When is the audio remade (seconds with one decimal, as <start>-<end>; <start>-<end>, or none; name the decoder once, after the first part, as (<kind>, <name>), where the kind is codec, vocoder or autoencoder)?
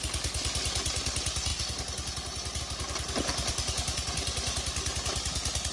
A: none